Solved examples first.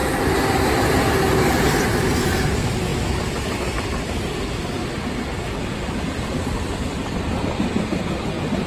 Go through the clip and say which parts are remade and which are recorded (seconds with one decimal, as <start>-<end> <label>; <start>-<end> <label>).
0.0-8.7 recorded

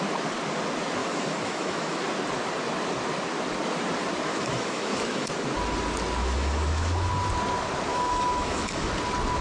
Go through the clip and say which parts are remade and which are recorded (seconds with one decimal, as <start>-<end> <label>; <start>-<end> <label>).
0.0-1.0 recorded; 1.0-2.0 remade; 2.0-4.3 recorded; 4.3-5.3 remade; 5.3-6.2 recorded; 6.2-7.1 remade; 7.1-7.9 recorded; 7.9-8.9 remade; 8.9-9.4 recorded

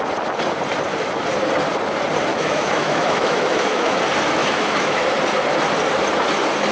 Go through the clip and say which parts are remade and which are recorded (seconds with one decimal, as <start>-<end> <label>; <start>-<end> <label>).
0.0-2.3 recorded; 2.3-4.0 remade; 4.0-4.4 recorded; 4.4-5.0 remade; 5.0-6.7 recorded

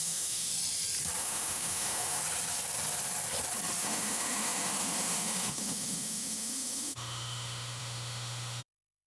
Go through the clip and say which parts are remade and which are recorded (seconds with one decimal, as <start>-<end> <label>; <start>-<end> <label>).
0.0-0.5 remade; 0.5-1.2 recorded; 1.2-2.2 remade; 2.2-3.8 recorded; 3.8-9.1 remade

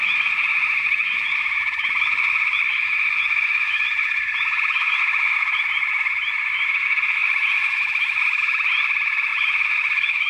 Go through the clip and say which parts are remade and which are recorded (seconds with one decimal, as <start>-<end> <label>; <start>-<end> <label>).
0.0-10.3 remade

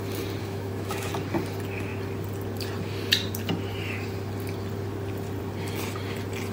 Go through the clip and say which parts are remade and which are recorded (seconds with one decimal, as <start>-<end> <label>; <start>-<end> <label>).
0.0-0.4 recorded; 0.4-1.1 remade; 1.1-6.5 recorded

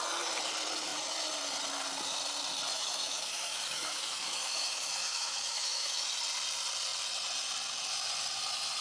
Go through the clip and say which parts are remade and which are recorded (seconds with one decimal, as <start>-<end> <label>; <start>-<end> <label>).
0.0-2.7 recorded; 2.7-6.2 remade; 6.2-8.8 recorded